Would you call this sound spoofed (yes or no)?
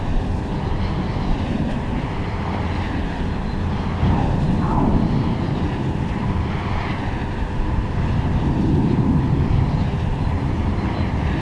no